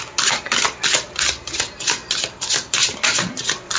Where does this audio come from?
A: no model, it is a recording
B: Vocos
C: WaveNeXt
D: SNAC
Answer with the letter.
A